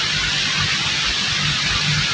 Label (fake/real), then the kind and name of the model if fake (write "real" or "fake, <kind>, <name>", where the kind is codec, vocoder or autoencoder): real